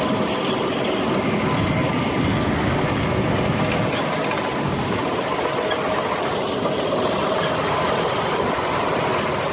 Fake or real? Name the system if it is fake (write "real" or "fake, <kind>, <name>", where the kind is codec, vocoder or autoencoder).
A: real